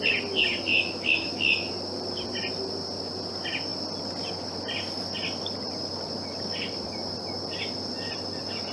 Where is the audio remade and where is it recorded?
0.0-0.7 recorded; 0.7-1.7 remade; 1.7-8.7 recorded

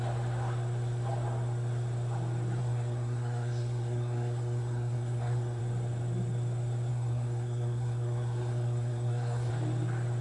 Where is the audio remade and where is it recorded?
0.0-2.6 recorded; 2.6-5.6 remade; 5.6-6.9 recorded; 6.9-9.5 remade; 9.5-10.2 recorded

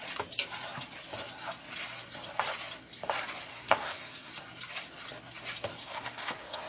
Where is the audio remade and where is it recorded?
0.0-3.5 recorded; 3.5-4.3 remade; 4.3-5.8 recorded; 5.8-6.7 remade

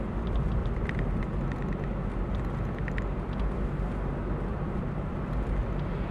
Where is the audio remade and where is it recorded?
0.0-0.6 recorded; 0.6-1.4 remade; 1.4-4.5 recorded; 4.5-5.1 remade; 5.1-6.1 recorded

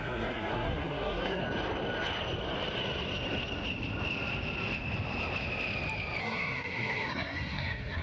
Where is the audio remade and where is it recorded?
0.0-1.4 remade; 1.4-6.2 recorded; 6.2-8.0 remade